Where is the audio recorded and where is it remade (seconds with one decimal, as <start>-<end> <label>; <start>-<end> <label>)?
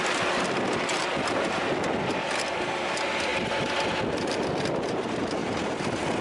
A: 0.0-6.2 recorded